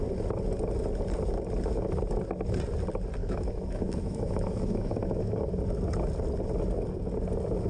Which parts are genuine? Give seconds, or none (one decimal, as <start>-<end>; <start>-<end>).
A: 0.0-3.2; 5.4-7.7